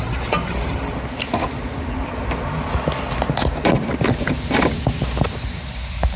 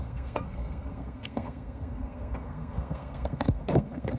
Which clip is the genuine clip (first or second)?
first